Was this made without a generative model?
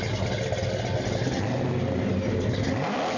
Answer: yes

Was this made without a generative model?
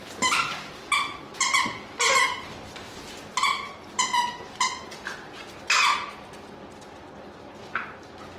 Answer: yes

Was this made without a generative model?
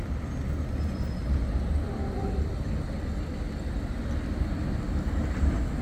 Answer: yes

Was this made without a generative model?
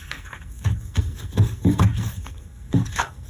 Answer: no